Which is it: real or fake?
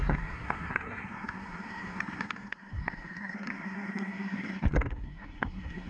fake